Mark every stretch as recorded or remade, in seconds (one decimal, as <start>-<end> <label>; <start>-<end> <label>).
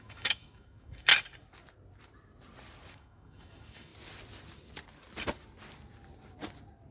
0.0-1.1 remade; 1.1-2.9 recorded; 2.9-3.9 remade; 3.9-6.9 recorded